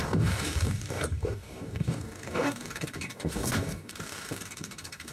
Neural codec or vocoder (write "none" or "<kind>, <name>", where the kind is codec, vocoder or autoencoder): codec, DAC